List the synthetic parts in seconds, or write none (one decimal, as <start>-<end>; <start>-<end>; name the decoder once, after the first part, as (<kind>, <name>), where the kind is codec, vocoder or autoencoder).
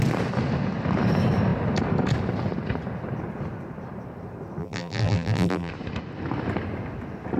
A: 4.6-5.7 (vocoder, BigVGAN v2)